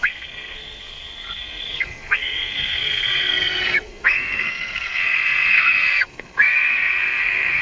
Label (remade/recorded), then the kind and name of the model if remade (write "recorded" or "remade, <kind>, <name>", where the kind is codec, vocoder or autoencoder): remade, codec, SNAC